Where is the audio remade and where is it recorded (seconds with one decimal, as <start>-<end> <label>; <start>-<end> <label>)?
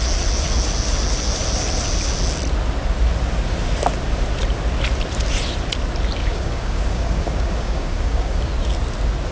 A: 0.0-6.2 recorded; 6.2-8.4 remade; 8.4-9.3 recorded